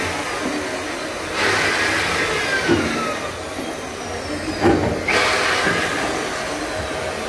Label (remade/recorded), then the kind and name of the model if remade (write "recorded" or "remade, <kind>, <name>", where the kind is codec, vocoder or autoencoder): recorded